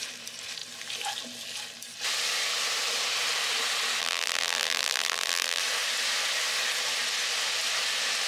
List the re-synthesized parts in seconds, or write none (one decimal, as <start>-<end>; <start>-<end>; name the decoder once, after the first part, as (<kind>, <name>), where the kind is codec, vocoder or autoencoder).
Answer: 4.0-5.6 (vocoder, BigVGAN v2)